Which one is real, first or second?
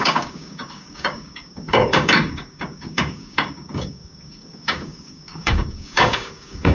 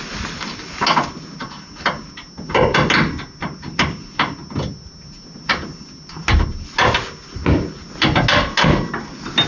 second